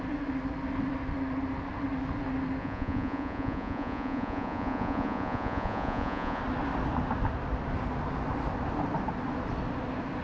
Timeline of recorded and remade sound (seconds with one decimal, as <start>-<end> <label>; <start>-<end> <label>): 0.0-2.6 recorded; 2.6-6.4 remade; 6.4-10.2 recorded